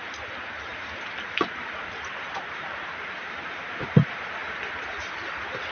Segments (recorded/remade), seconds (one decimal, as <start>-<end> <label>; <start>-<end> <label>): 0.0-0.7 recorded; 0.7-3.7 remade; 3.7-5.7 recorded